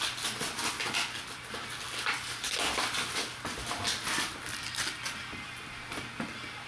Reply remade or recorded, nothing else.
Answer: recorded